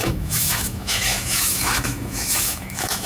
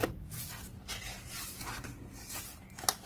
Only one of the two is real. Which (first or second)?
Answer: second